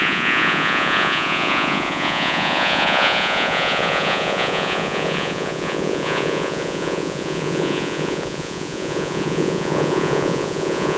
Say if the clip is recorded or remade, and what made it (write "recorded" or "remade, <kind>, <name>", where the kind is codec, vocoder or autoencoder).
remade, vocoder, Vocos